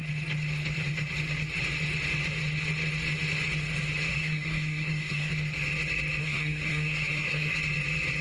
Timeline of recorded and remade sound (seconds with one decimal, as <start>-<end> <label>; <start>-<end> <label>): 0.0-4.1 recorded; 4.1-5.3 remade; 5.3-6.2 recorded; 6.2-7.6 remade; 7.6-8.2 recorded